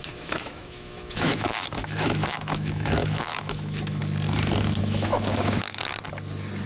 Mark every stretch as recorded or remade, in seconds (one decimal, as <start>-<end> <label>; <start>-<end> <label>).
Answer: 0.0-4.0 remade; 4.0-4.8 recorded; 4.8-5.8 remade; 5.8-6.7 recorded